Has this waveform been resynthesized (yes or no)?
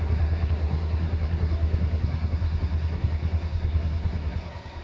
yes